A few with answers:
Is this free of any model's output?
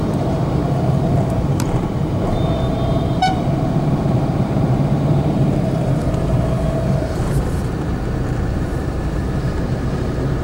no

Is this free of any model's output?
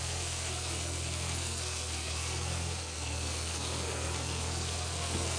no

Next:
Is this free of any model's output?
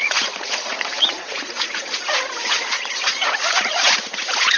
no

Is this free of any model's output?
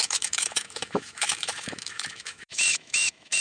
no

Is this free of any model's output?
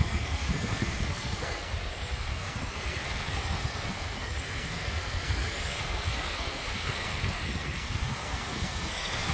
no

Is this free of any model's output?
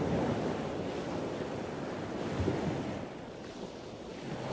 yes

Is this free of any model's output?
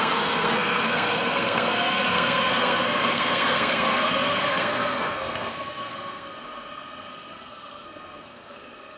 no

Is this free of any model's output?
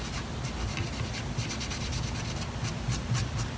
yes